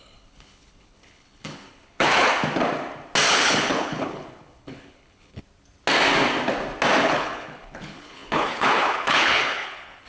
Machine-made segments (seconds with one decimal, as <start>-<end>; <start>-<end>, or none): 0.0-2.3; 3.3-5.4; 7.0-10.1